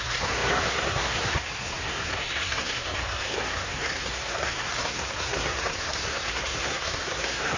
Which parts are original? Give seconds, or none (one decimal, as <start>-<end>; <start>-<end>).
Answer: none